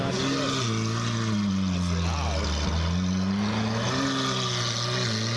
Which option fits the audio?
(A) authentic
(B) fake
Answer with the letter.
A